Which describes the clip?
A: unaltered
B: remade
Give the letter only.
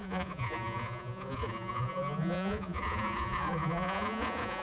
B